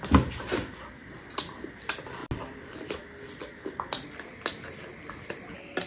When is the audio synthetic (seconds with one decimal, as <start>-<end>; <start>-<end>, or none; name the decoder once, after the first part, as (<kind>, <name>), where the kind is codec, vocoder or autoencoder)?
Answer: none